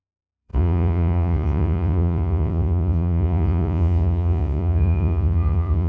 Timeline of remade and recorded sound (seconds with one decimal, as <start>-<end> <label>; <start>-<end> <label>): 0.0-5.9 remade